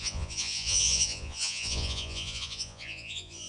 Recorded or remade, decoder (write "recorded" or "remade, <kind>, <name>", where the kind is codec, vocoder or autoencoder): remade, vocoder, Vocos